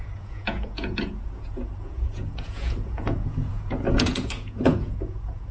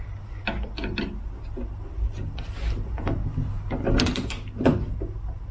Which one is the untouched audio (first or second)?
second